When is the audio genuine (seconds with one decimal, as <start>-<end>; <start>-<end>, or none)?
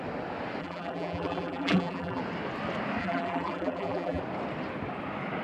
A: 0.0-0.6; 2.2-3.0; 4.2-5.4